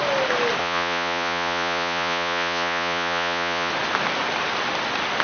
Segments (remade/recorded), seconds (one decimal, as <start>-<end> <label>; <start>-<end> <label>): 0.0-0.6 recorded; 0.6-3.7 remade; 3.7-5.2 recorded